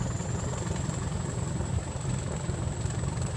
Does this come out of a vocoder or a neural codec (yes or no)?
no